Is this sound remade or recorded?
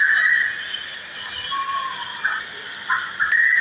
remade